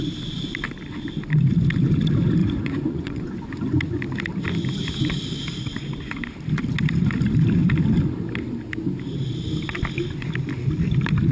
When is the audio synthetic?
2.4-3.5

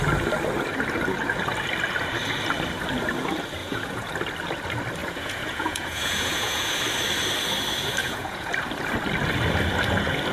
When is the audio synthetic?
3.6-4.1; 5.0-6.8; 8.0-8.5

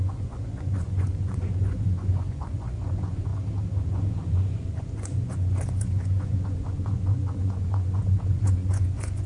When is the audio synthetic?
0.0-3.3; 3.9-9.3

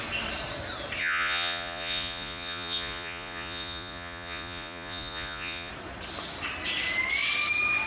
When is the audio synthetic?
1.0-5.7

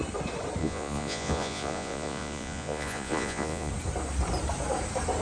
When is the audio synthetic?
0.6-3.7

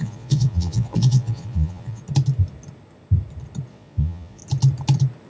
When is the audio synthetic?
0.0-2.0; 3.7-4.4

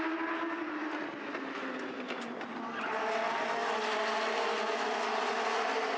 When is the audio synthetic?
none

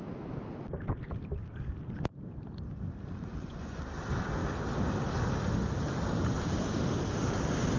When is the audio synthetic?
3.3-3.8